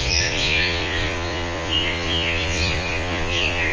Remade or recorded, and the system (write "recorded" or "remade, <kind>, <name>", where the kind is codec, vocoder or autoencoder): remade, vocoder, Vocos